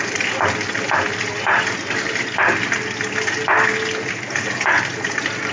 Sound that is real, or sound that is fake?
real